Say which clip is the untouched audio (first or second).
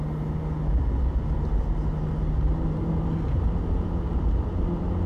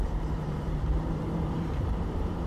first